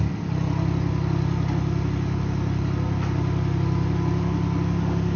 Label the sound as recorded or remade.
recorded